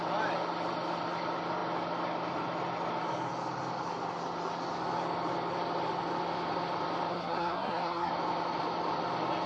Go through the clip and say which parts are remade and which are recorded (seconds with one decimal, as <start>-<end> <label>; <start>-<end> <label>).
0.0-7.1 recorded; 7.1-8.1 remade; 8.1-9.5 recorded